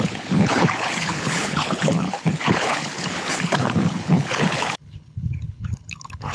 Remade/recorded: remade